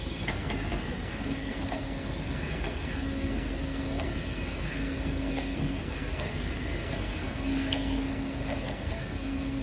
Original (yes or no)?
no